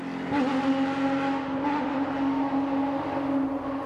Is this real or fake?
real